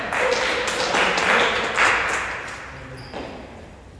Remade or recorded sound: recorded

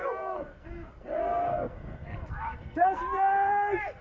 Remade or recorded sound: remade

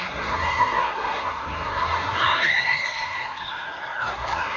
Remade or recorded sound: remade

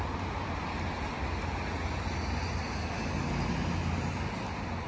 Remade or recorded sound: recorded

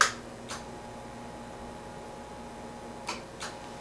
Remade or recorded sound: recorded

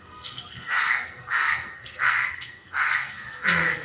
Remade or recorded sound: remade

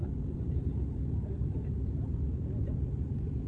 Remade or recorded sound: recorded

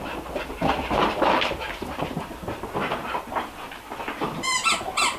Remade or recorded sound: recorded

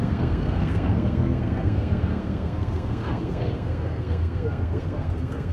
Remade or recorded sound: remade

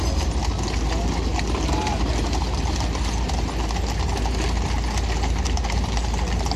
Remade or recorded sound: recorded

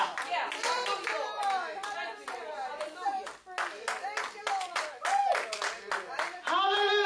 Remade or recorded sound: recorded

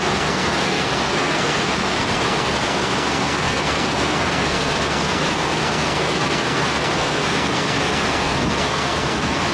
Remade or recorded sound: remade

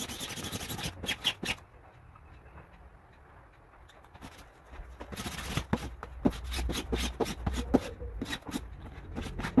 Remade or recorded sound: recorded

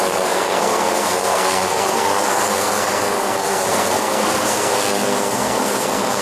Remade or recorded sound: remade